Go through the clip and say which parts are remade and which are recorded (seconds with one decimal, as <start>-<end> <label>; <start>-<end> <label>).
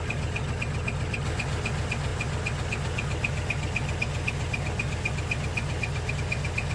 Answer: 0.0-6.7 recorded